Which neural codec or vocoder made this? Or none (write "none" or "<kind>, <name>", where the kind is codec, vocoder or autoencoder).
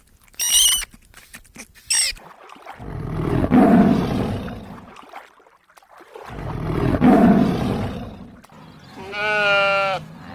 none